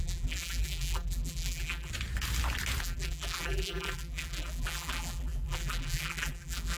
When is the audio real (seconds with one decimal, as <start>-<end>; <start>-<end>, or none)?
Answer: 1.9-2.8